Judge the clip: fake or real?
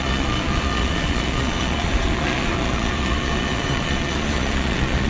fake